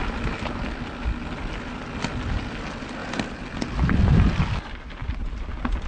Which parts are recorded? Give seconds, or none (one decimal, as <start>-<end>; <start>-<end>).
0.0-5.9